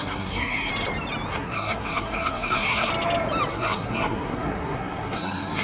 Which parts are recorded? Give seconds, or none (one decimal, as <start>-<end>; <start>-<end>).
0.7-1.3; 2.9-3.5